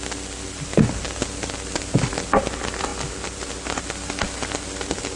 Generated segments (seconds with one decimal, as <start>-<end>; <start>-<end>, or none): none